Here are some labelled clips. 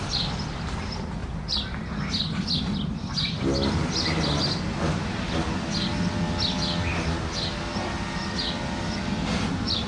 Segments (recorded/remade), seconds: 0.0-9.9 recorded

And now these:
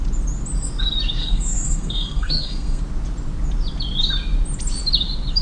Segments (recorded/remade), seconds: 0.0-1.2 recorded; 1.2-2.8 remade; 2.8-5.4 recorded

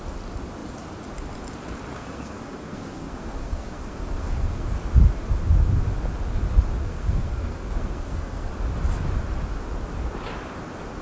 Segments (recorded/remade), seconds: 0.0-1.9 recorded; 1.9-4.7 remade; 4.7-6.8 recorded; 6.8-8.5 remade; 8.5-11.0 recorded

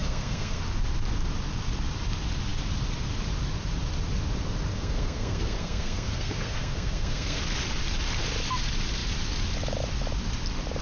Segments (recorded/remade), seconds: 0.0-0.6 remade; 0.6-4.7 recorded; 4.7-7.4 remade; 7.4-10.8 recorded